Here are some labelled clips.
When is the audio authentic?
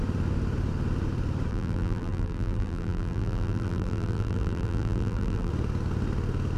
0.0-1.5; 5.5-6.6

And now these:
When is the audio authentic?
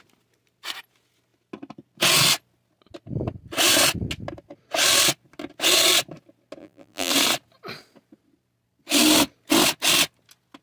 0.0-6.6; 7.1-10.6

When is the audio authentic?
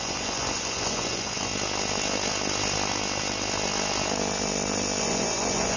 1.5-5.0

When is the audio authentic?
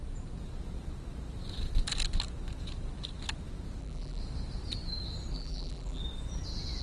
0.0-3.8; 4.2-5.3; 6.0-6.8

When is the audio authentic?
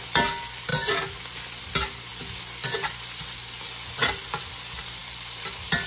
0.0-0.7; 1.6-5.0; 5.5-5.9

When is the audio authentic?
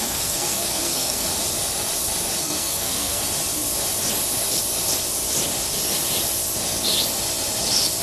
1.3-2.4; 3.2-8.0